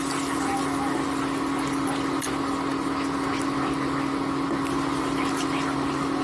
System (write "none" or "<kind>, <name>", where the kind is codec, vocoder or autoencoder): none